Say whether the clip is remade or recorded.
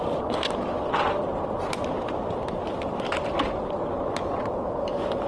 recorded